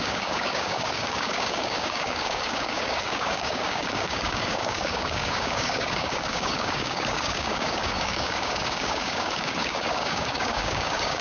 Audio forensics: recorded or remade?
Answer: remade